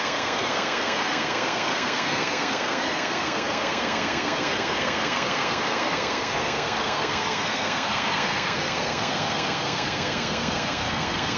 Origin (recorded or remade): remade